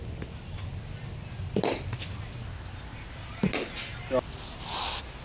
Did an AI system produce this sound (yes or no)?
no